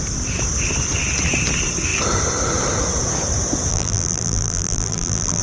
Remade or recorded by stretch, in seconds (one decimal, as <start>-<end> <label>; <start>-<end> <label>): 0.0-3.7 recorded; 3.7-5.4 remade